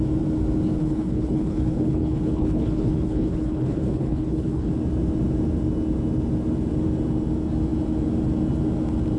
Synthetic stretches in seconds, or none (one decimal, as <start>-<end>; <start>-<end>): 0.8-4.7